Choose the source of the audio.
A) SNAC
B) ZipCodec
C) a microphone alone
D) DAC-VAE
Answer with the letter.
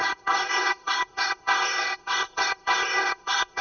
B